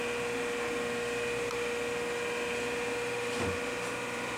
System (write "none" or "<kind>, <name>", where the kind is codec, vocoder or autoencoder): none